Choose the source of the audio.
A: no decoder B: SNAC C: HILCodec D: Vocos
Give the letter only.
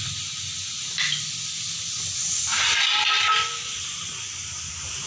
A